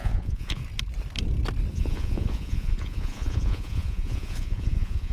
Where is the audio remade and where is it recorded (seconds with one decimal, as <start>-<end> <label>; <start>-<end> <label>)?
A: 0.0-0.6 remade; 0.6-1.7 recorded; 1.7-5.1 remade